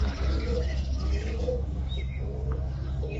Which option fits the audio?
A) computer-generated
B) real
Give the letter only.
A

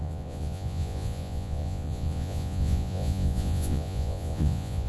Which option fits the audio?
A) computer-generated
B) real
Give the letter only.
A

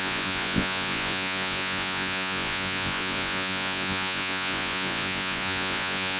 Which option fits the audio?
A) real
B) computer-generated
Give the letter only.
B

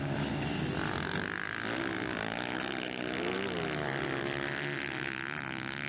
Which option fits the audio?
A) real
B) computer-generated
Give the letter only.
A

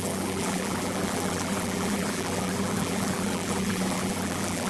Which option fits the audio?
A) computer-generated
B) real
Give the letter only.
A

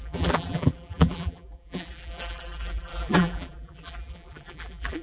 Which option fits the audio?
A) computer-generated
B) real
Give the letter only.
A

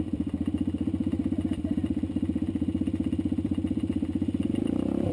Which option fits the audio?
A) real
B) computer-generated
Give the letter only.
B